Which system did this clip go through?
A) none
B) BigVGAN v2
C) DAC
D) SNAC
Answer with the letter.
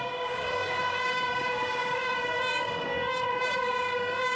C